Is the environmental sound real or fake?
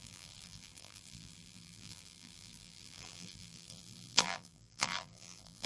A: fake